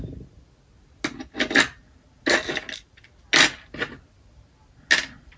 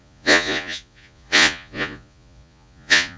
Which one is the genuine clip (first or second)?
first